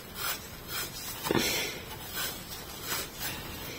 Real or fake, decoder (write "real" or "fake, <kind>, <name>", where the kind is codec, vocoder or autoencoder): real